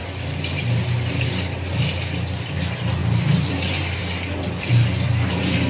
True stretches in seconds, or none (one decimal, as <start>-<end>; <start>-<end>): 2.5-3.0; 4.0-5.7